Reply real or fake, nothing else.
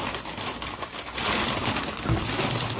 real